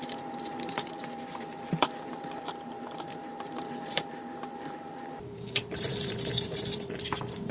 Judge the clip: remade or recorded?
remade